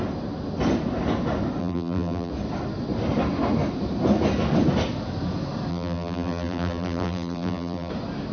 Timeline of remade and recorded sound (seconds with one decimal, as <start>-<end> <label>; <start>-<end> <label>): 0.0-1.6 recorded; 1.6-2.3 remade; 2.3-5.7 recorded; 5.7-7.9 remade; 7.9-8.3 recorded